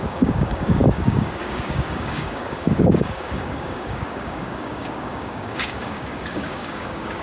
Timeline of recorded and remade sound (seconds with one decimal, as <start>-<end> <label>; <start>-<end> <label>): 0.0-7.2 remade